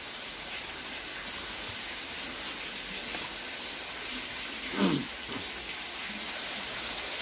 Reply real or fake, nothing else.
real